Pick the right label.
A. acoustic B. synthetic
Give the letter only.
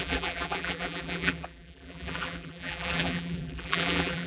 B